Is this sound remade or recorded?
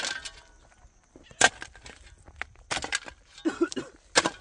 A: recorded